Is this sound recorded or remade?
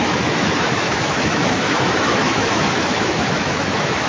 remade